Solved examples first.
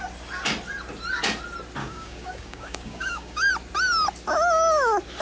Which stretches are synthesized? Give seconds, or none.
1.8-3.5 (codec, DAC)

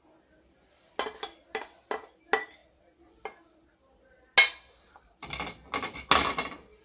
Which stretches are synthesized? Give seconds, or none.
none

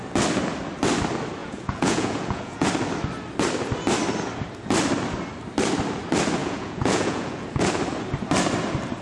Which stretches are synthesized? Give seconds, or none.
1.4-2.7 (vocoder, Vocos); 6.4-7.6

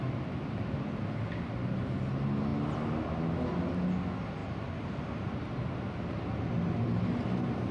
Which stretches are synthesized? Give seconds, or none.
none

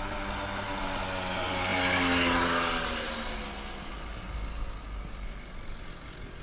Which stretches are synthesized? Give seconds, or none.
none

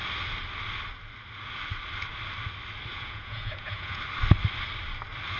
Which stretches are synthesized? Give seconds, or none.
2.9-4.0 (vocoder, Vocos)